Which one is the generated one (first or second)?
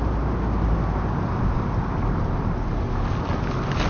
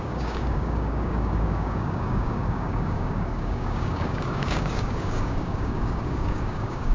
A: second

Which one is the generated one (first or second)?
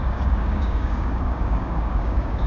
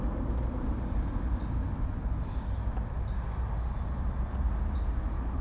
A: first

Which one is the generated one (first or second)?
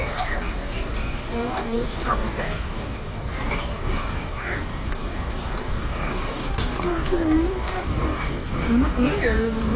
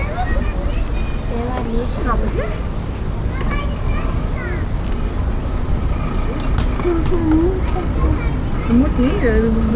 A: first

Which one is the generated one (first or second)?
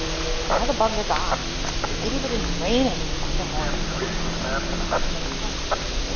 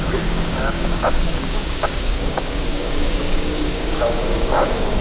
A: second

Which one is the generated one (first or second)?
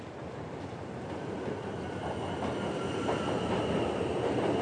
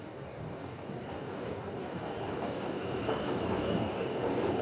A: second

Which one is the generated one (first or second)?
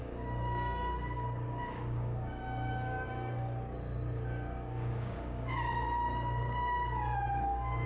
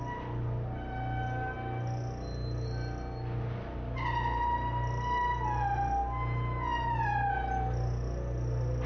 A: first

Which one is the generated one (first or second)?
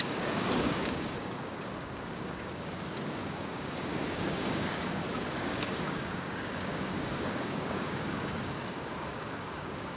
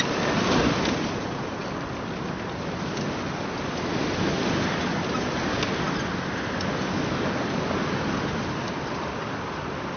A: first